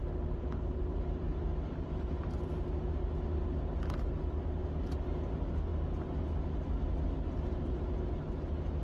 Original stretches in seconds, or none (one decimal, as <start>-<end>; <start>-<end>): 0.0-8.8